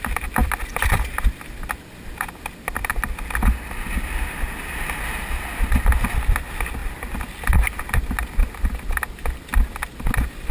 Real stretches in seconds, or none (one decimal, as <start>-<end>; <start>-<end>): 0.0-10.5